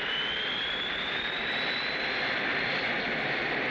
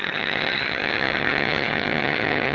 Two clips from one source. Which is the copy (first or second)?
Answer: second